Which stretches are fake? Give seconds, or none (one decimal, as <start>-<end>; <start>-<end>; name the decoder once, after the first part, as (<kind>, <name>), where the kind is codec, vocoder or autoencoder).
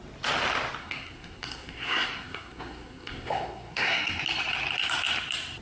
0.8-4.2 (codec, SNAC)